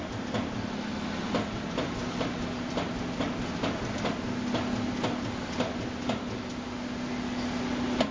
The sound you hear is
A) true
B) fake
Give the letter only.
A